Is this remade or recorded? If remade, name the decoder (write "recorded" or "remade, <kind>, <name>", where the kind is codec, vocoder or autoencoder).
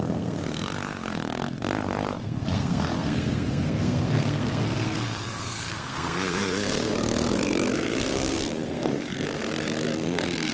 remade, codec, SNAC